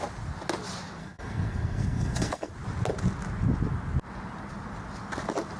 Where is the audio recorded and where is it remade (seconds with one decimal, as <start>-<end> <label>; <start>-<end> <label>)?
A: 0.0-1.0 recorded; 1.0-2.5 remade; 2.5-5.6 recorded